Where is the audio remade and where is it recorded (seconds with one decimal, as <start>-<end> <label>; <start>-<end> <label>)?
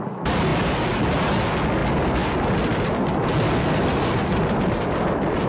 0.0-5.5 recorded